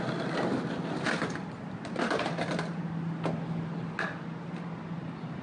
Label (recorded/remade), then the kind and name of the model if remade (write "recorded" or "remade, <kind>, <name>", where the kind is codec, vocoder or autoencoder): recorded